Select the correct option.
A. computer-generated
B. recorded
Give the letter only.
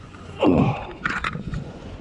A